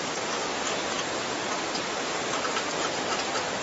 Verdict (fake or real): real